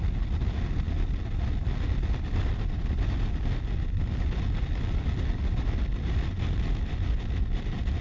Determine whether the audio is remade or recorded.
recorded